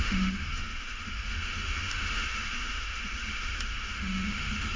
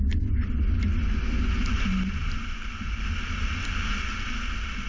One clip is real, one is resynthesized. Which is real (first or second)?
second